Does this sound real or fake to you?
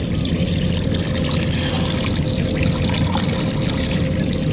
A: real